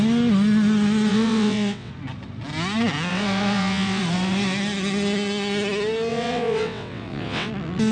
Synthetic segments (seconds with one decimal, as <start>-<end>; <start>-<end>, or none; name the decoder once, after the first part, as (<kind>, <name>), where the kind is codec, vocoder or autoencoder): 1.1-1.9 (vocoder, WaveNeXt); 3.1-4.0; 6.1-7.5